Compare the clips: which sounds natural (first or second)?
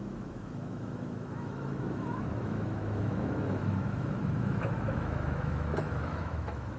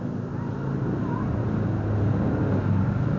second